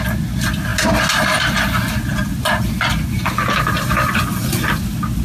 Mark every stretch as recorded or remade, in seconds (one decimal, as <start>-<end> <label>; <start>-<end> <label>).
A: 0.0-5.2 recorded